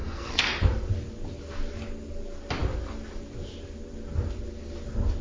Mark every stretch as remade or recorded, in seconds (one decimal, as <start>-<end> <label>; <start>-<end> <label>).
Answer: 0.0-0.6 remade; 0.6-5.2 recorded